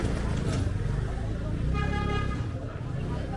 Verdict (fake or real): real